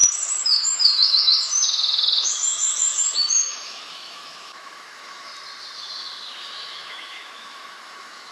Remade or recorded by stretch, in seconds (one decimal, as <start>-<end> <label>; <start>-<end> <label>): 0.0-5.3 remade; 5.3-6.3 recorded; 6.3-8.3 remade